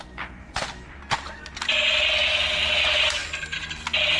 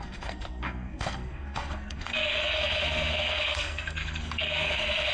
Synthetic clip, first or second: second